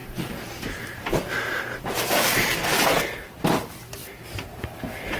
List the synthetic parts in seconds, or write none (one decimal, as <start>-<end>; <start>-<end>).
0.0-2.5; 4.0-4.6